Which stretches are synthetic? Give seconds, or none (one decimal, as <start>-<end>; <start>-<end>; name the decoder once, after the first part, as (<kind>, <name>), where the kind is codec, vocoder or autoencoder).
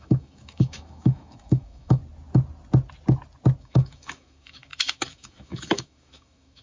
0.0-2.0 (autoencoder, DAC-VAE); 3.6-6.6